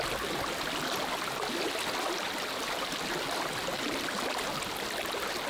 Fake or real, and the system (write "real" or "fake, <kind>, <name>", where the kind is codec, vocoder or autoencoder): real